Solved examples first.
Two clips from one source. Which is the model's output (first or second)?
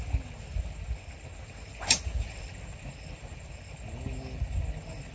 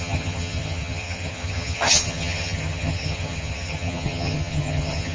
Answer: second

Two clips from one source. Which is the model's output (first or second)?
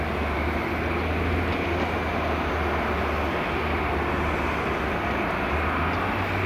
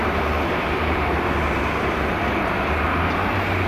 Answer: second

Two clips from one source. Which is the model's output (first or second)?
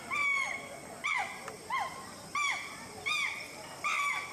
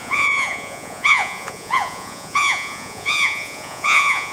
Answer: second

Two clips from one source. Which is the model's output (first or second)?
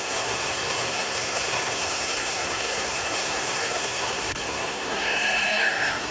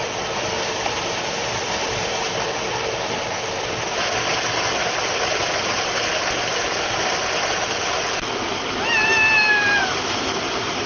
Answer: first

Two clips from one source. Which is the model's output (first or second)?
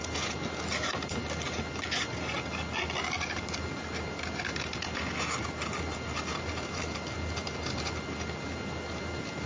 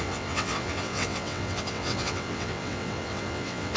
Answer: second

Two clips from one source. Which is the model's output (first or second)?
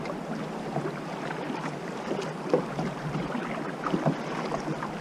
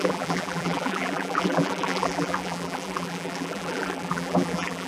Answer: second